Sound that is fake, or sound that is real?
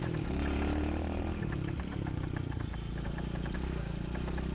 real